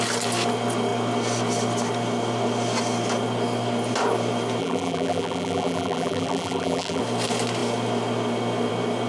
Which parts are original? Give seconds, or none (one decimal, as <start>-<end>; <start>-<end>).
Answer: 0.0-4.6; 7.0-9.1

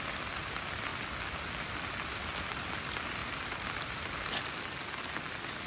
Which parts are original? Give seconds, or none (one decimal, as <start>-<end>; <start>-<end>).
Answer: 0.0-5.7

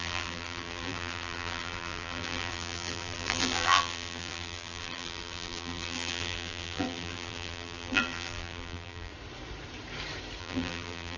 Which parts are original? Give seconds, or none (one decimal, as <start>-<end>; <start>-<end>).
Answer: 9.1-10.4

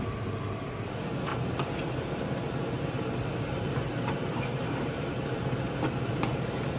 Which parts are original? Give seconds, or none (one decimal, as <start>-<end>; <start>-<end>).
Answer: 0.0-3.3; 6.1-6.8

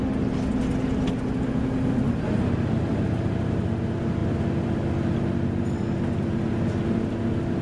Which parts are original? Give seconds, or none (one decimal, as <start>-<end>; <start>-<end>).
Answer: 0.0-7.6

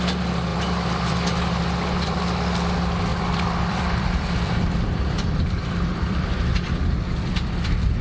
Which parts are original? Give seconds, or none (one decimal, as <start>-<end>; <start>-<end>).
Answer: 0.0-0.5; 2.2-3.1; 6.8-8.0